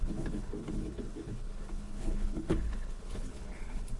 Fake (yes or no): yes